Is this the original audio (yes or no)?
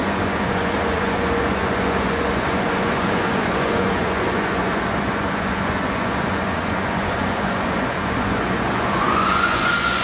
no